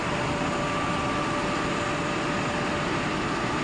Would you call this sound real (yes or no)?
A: yes